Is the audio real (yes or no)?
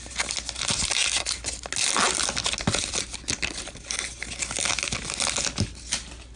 yes